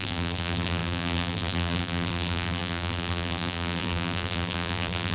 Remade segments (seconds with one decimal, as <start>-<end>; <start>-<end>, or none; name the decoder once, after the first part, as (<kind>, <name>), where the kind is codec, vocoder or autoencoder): 0.0-5.1 (vocoder, BigVGAN v2)